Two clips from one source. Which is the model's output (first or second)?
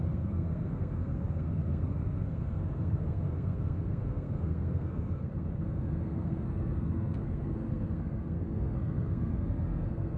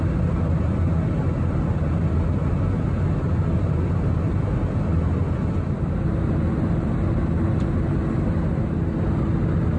first